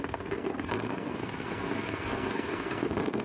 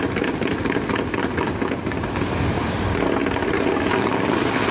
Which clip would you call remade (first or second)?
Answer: first